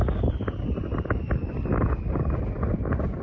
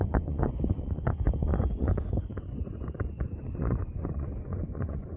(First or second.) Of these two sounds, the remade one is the second